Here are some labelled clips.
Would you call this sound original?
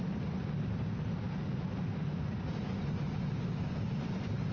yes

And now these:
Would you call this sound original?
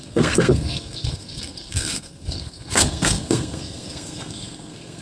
no